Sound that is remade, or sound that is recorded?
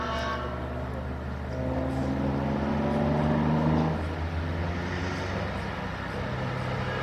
recorded